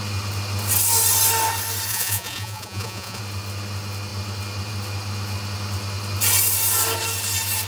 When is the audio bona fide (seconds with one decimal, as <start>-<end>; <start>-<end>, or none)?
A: 0.0-1.9; 3.2-7.7